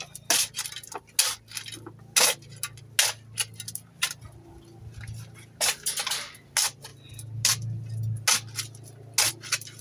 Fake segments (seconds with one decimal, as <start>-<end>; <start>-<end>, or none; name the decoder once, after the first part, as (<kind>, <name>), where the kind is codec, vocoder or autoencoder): none